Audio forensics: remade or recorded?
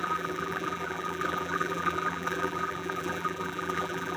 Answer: remade